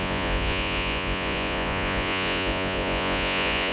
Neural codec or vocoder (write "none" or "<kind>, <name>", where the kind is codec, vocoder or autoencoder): vocoder, Vocos